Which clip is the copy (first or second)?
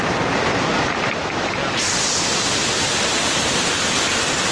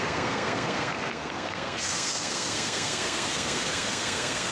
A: second